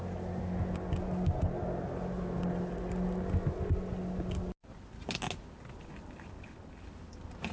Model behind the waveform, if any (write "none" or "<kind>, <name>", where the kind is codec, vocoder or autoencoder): none